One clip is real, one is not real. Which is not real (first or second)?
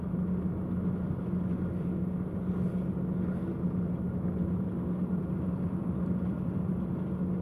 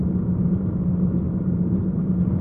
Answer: second